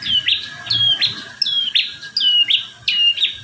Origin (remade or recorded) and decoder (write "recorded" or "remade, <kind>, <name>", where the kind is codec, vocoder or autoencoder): recorded